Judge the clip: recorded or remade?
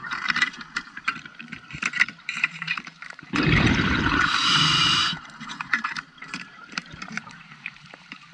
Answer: remade